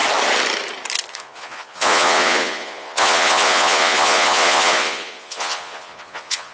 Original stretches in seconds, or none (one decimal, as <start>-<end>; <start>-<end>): 0.0-1.1